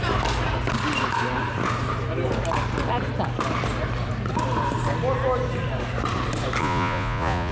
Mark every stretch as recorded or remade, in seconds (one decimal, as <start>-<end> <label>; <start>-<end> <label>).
0.0-6.6 recorded; 6.6-7.5 remade

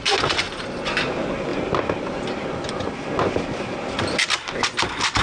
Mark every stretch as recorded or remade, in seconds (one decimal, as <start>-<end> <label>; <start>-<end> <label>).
0.0-5.2 recorded